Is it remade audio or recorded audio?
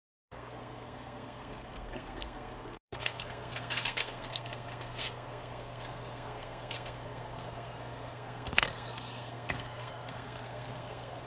remade